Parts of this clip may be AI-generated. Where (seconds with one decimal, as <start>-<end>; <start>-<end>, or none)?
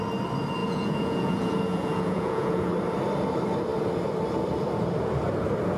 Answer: 0.6-2.7